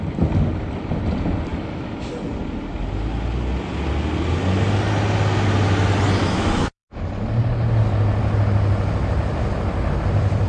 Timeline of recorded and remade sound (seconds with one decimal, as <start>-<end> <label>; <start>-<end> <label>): 0.0-1.5 recorded; 1.5-2.1 remade; 2.1-6.2 recorded; 6.2-7.0 remade; 7.0-10.5 recorded